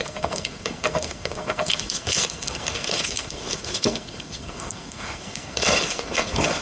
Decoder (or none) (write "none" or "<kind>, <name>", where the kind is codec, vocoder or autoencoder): codec, SNAC